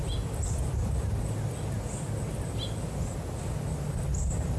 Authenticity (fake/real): real